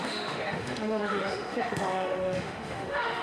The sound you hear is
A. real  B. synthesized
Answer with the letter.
B